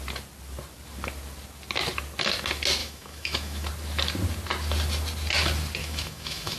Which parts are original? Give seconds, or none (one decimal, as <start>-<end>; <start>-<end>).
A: 0.0-2.8; 3.7-5.8

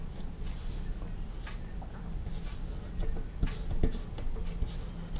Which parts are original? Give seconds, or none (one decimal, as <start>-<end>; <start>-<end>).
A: 0.0-5.2